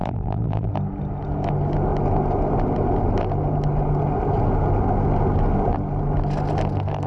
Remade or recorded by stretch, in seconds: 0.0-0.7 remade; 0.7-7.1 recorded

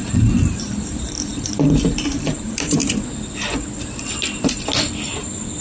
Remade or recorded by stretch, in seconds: 0.0-2.8 remade; 2.8-5.1 recorded; 5.1-5.6 remade

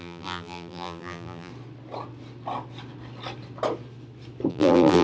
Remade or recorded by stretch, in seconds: 0.0-1.5 remade; 1.5-4.5 recorded; 4.5-5.0 remade

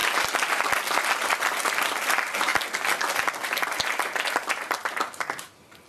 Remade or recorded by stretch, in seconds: 0.0-5.9 recorded

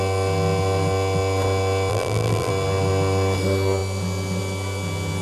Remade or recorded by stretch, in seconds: 0.0-1.9 recorded; 1.9-2.5 remade; 2.5-5.2 recorded